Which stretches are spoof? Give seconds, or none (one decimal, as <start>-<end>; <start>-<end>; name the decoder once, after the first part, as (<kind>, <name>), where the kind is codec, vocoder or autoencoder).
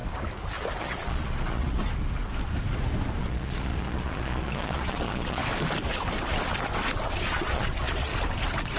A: 0.8-1.8 (vocoder, Vocos); 3.2-5.4; 7.1-8.1